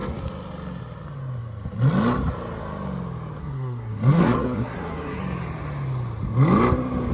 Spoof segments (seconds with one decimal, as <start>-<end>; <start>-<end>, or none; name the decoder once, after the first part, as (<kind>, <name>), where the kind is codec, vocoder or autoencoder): 3.4-5.2 (codec, SNAC)